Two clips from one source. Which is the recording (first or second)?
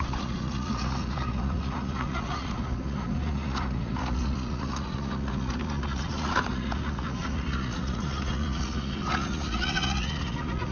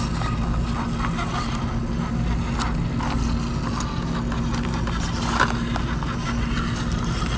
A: second